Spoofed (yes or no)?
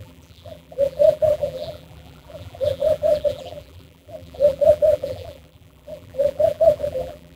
yes